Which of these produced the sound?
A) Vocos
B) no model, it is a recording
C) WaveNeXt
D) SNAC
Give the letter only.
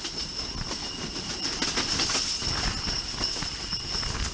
B